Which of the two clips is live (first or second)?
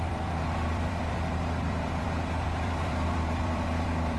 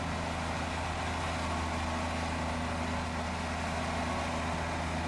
second